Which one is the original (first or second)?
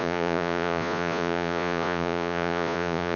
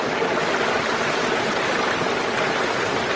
second